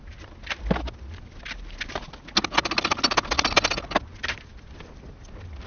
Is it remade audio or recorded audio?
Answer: recorded